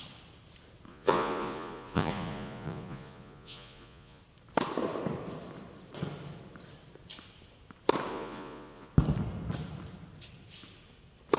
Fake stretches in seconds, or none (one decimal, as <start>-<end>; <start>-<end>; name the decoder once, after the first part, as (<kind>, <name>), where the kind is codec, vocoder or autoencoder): 0.9-4.2 (vocoder, Vocos); 8.1-8.9